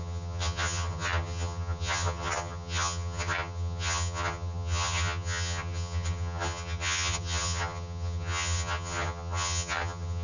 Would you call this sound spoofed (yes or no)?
yes